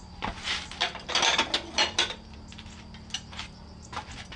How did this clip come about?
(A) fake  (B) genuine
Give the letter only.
B